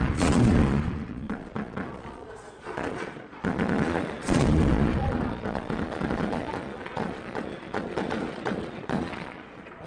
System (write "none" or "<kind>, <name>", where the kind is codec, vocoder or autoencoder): vocoder, Vocos